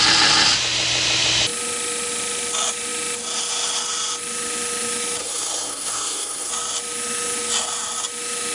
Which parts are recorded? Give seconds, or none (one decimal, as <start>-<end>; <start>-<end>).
0.0-5.2; 6.5-8.5